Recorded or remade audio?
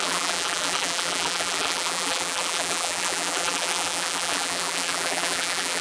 remade